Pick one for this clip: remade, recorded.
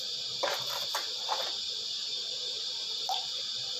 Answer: recorded